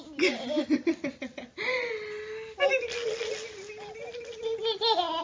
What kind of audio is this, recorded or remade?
recorded